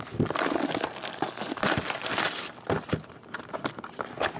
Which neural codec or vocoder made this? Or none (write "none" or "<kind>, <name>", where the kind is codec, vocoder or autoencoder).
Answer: none